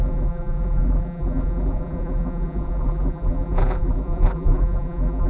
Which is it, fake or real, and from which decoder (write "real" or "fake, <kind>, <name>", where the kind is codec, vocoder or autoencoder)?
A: fake, vocoder, BigVGAN v2